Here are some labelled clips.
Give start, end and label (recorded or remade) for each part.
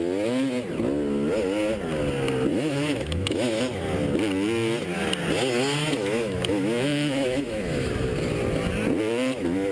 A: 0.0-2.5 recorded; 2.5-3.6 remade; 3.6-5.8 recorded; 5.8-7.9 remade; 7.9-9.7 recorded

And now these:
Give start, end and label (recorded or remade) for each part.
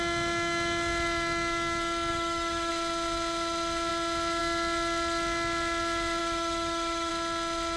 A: 0.0-2.1 recorded; 2.1-2.7 remade; 2.7-6.2 recorded; 6.2-7.1 remade; 7.1-7.8 recorded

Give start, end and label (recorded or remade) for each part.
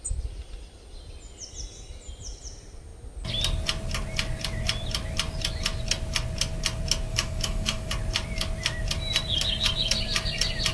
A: 0.0-7.1 recorded; 7.1-7.9 remade; 7.9-10.7 recorded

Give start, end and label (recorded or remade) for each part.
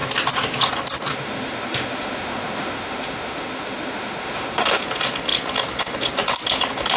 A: 0.0-1.1 recorded; 1.1-4.8 remade; 4.8-7.0 recorded